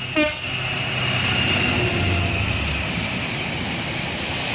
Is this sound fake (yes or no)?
no